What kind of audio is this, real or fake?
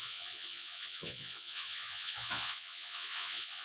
fake